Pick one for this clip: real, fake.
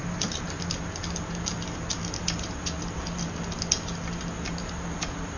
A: real